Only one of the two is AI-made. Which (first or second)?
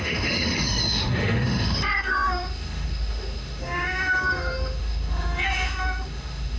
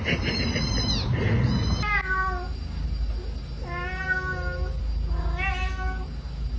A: first